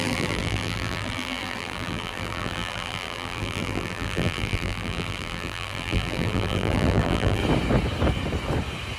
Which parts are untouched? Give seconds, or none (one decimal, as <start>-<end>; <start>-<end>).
7.4-9.0